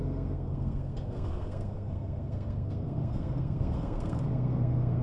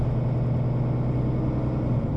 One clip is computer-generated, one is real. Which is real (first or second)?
second